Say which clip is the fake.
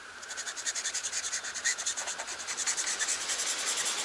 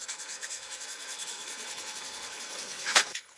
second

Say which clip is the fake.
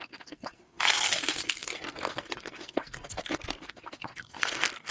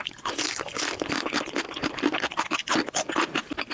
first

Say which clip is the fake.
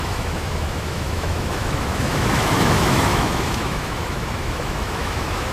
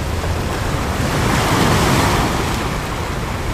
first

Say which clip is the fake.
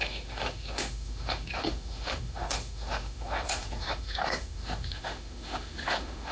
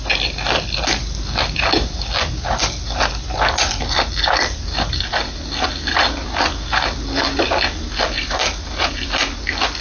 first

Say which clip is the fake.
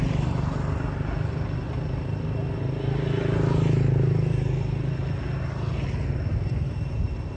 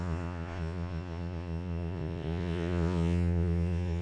second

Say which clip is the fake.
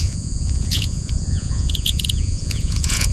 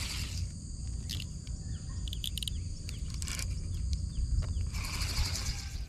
first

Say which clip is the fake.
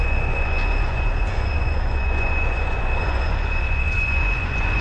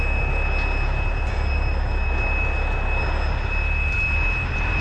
first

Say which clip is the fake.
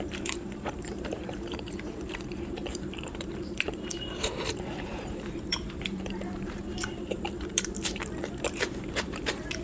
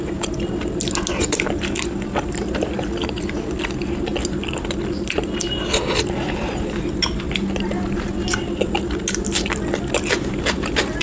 first